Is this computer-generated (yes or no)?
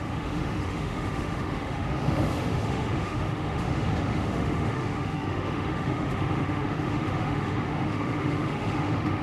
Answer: yes